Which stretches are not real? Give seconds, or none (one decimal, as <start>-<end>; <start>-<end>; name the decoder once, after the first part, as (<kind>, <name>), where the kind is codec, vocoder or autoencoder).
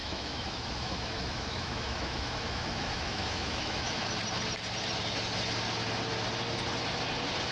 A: 0.0-4.1 (autoencoder, DAC-VAE)